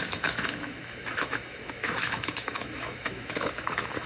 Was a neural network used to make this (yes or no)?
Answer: yes